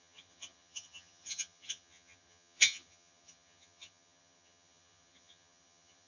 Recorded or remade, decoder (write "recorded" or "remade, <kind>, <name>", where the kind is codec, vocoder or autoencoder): remade, vocoder, HiFi-GAN